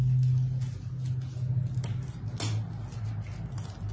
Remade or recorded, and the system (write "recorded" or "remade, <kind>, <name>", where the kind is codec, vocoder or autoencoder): recorded